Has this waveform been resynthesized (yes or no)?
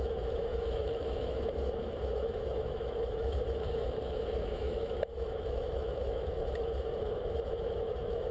yes